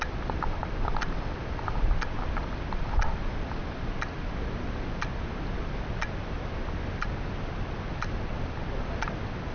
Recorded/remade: recorded